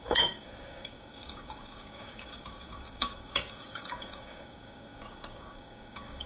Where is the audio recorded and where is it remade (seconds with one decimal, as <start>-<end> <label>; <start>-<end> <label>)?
0.0-6.3 remade